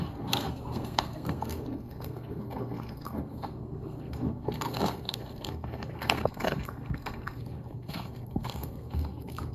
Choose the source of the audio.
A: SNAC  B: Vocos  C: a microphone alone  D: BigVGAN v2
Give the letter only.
A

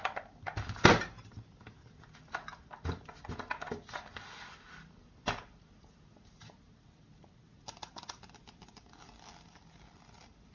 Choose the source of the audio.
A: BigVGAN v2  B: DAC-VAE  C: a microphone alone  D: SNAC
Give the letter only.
C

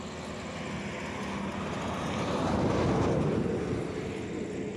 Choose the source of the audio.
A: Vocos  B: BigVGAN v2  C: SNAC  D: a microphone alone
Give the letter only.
D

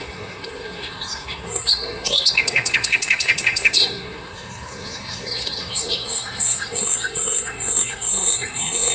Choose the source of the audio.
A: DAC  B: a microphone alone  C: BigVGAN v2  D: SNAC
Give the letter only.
D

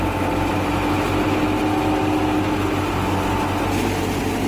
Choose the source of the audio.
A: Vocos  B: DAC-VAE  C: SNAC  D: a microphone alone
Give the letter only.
D